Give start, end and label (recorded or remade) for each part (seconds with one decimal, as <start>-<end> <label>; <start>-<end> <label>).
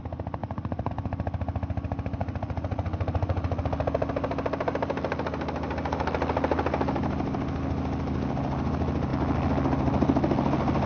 0.0-0.4 recorded; 0.4-0.9 remade; 0.9-2.2 recorded; 2.2-3.6 remade; 3.6-10.9 recorded